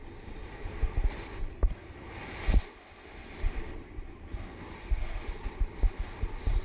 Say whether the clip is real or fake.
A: real